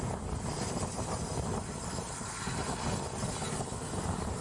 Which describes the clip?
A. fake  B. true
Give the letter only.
B